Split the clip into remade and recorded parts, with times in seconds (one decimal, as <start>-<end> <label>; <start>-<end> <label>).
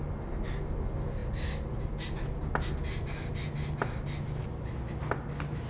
0.0-5.7 recorded